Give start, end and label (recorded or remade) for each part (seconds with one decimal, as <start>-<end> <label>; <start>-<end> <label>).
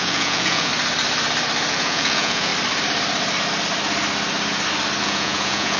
0.0-0.7 remade; 0.7-1.7 recorded; 1.7-2.5 remade; 2.5-5.0 recorded; 5.0-5.8 remade